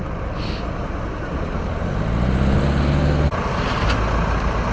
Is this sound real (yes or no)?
yes